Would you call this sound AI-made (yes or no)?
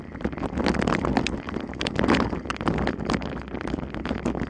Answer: no